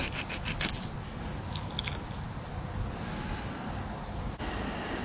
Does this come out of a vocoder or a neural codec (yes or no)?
no